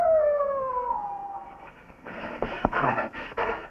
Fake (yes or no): yes